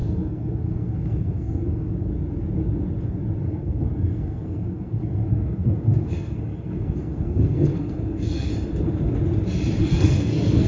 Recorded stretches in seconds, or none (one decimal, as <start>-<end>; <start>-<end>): 2.1-3.4; 8.5-9.8